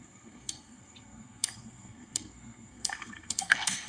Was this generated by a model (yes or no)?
yes